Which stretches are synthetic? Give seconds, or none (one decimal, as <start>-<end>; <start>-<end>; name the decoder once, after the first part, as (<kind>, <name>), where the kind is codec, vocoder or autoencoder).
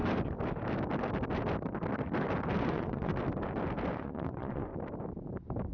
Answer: 2.6-3.1 (vocoder, Vocos); 3.9-4.7